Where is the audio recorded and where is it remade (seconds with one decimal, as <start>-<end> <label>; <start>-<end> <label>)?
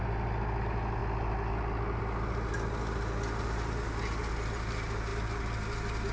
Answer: 0.0-6.1 recorded